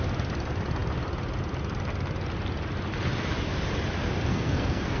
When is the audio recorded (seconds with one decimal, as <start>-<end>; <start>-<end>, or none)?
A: 0.0-4.3

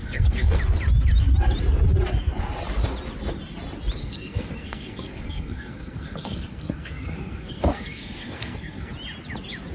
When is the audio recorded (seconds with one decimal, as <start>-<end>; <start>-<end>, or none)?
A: 0.6-4.0; 8.9-9.7